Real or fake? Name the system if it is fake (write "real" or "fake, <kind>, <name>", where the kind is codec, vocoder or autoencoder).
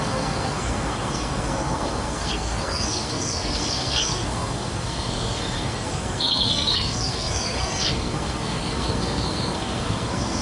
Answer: fake, codec, SNAC